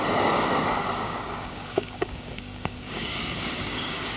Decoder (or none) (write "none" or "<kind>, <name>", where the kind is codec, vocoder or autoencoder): codec, DAC